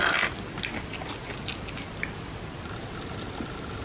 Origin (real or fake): real